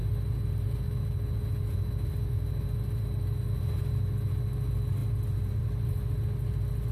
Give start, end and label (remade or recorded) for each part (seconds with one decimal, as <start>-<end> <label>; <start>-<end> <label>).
0.0-6.9 recorded